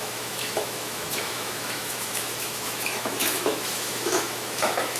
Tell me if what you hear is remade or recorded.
remade